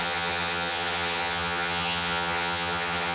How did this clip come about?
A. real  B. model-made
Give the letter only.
B